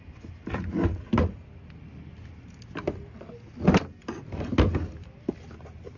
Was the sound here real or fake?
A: real